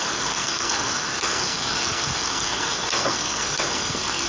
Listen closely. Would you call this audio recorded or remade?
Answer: remade